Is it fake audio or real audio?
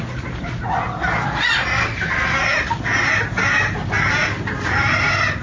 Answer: real